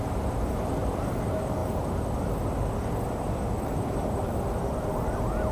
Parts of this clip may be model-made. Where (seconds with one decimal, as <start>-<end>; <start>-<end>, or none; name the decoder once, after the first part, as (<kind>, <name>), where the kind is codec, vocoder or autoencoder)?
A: none